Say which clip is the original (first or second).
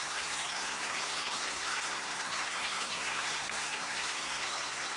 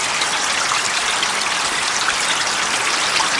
second